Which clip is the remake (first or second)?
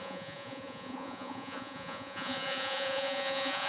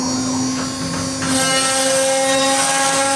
first